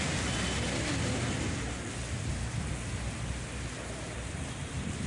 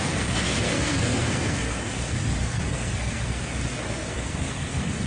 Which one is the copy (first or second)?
second